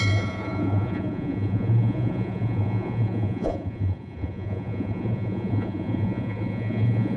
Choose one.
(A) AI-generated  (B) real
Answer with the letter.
A